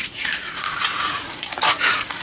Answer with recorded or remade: remade